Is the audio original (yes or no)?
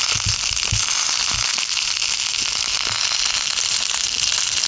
yes